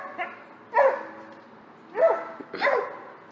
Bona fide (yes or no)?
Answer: yes